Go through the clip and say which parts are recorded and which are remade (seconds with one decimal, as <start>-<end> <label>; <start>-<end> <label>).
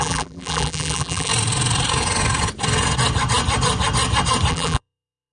0.0-1.3 remade; 1.3-4.5 recorded; 4.5-5.3 remade